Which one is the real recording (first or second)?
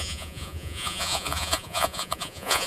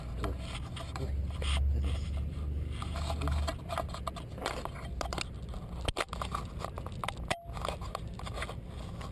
second